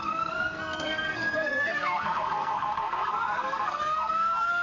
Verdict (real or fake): fake